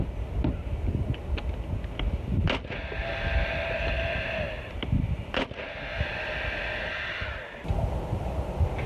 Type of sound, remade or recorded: recorded